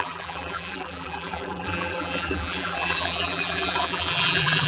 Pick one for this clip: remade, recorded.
remade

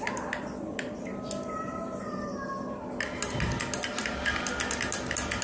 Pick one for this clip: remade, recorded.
recorded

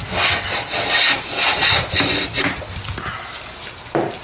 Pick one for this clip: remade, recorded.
recorded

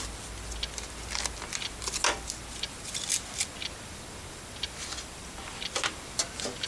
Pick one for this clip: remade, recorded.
recorded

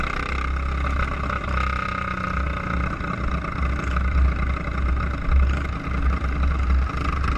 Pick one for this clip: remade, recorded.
recorded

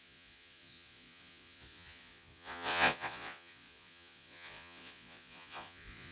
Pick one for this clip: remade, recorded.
remade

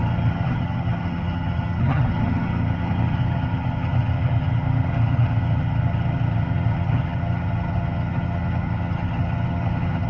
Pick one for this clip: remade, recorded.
remade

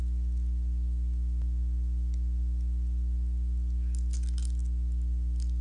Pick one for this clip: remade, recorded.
recorded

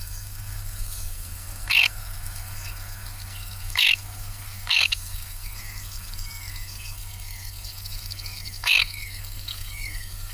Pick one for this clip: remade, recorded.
remade